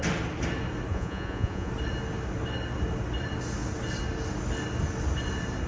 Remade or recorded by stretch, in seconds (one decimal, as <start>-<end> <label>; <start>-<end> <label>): 0.0-0.9 recorded; 0.9-1.7 remade; 1.7-5.7 recorded